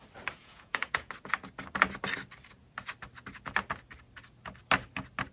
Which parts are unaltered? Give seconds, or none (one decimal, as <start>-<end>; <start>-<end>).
0.0-0.4; 1.1-5.3